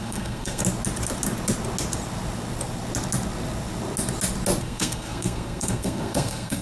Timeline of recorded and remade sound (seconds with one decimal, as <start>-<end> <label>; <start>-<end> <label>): 0.0-0.6 remade; 0.6-4.6 recorded; 4.6-6.6 remade